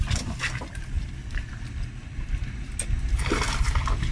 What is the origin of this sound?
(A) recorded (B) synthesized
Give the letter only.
A